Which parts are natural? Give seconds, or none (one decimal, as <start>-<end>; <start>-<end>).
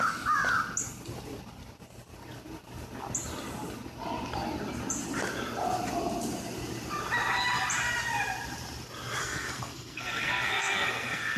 0.0-9.2